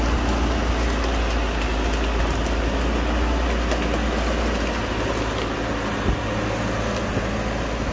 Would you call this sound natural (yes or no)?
yes